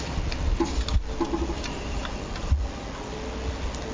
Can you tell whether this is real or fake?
real